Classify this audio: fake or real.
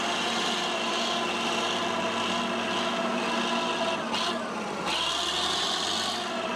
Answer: real